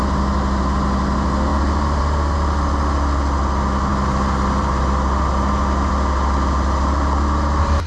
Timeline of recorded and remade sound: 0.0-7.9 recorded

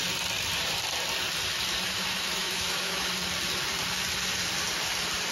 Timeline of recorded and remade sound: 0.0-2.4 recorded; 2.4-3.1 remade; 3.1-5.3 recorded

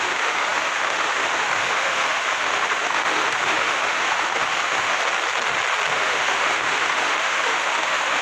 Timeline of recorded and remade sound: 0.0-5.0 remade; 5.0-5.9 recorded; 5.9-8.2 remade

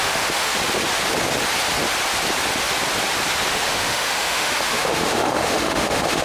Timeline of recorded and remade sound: 0.0-0.5 remade; 0.5-3.5 recorded; 3.5-6.2 remade

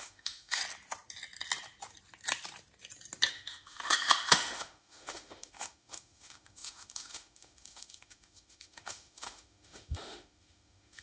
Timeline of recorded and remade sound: 0.0-0.6 remade; 0.6-3.3 recorded; 3.3-11.0 remade

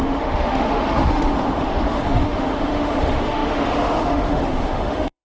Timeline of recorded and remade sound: 0.0-5.2 remade

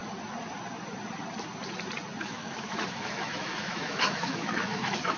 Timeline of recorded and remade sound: 0.0-2.2 recorded; 2.2-5.2 remade

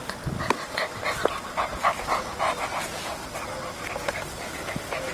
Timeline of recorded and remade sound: 0.0-5.1 recorded